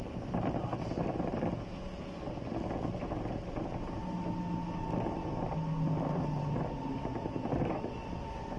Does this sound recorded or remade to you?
recorded